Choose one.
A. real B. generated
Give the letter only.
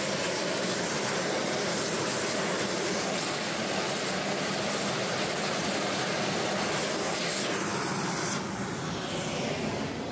A